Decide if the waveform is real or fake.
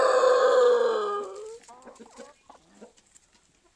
real